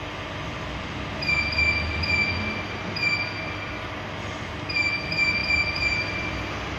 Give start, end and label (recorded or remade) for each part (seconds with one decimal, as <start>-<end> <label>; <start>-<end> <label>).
0.0-6.8 recorded